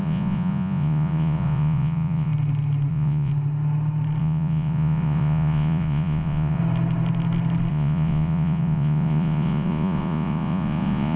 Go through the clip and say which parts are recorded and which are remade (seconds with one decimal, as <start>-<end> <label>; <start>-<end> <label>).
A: 0.0-2.3 remade; 2.3-2.9 recorded; 2.9-3.3 remade; 3.3-4.2 recorded; 4.2-6.6 remade; 6.6-7.7 recorded; 7.7-11.2 remade